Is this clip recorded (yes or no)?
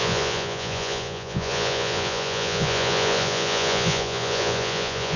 no